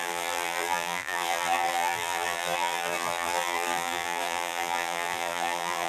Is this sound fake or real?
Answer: fake